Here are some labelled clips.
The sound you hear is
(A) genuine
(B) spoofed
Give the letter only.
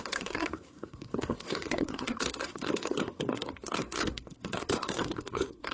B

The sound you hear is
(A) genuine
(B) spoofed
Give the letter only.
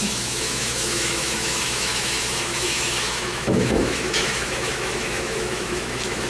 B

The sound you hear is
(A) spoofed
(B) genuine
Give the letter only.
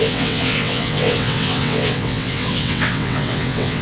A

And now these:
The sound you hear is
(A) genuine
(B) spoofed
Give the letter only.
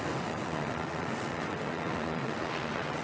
B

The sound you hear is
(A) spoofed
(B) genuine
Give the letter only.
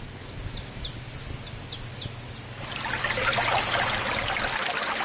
B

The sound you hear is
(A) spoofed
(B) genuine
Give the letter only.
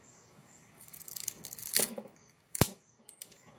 A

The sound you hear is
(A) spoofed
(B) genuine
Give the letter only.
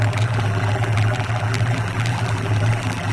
A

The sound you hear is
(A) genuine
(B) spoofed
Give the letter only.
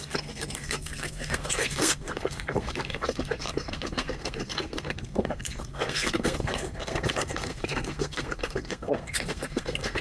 B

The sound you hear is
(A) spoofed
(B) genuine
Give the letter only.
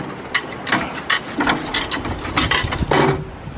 B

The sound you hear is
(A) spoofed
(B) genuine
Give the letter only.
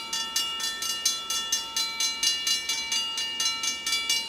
B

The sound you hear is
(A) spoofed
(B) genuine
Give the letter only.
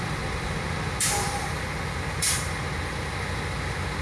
B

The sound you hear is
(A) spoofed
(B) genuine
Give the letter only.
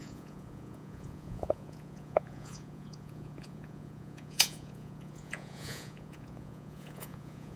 A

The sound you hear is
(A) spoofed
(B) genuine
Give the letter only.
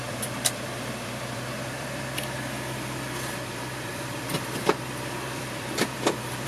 A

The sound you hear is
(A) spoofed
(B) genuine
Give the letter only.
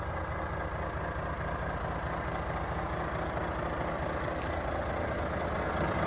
B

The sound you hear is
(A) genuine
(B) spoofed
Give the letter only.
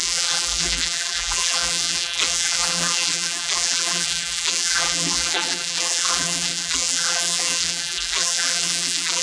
B